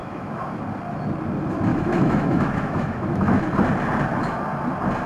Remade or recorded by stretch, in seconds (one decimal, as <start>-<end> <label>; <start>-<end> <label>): 0.0-0.6 remade; 0.6-1.7 recorded; 1.7-3.4 remade; 3.4-5.1 recorded